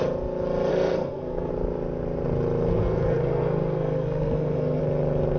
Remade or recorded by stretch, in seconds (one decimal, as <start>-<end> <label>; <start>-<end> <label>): 0.0-0.7 recorded; 0.7-1.5 remade; 1.5-2.7 recorded; 2.7-4.8 remade; 4.8-5.4 recorded